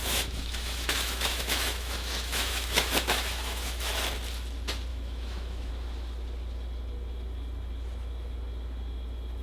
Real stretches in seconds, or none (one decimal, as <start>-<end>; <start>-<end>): 3.9-4.9; 5.7-9.4